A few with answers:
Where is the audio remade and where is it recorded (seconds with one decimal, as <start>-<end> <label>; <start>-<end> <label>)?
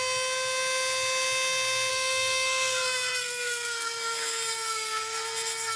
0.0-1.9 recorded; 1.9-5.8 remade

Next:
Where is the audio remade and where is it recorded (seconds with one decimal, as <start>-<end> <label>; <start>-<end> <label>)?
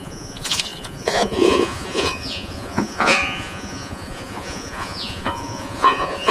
0.0-6.3 remade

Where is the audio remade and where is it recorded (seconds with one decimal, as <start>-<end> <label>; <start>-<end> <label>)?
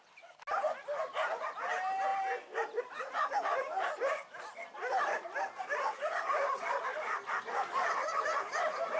0.0-9.0 recorded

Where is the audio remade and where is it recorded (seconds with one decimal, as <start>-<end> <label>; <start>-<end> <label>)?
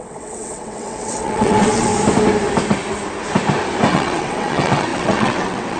0.0-1.9 remade; 1.9-3.9 recorded; 3.9-5.8 remade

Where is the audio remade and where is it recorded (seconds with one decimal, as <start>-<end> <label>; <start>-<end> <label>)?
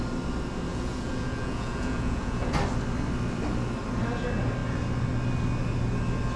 0.0-0.7 recorded; 0.7-2.5 remade; 2.5-6.4 recorded